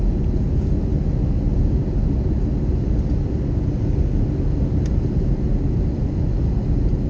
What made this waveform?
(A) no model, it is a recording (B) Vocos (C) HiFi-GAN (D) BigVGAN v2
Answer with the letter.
A